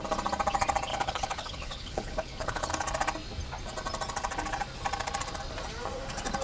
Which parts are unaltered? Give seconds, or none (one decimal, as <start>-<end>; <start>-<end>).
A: 0.0-0.9; 2.7-6.4